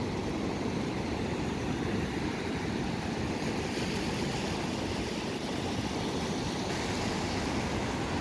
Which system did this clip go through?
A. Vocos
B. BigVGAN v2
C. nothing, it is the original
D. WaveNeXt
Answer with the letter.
C